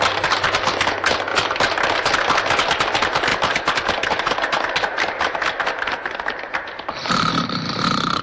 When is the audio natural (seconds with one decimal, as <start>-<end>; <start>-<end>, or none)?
0.0-3.3